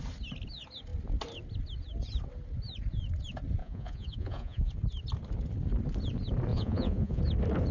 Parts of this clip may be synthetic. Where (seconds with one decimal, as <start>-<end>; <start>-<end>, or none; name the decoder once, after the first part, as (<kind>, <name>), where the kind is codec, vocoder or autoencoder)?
3.6-4.7 (vocoder, Vocos); 6.5-7.2